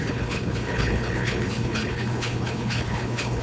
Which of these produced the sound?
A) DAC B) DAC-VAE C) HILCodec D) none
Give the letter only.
C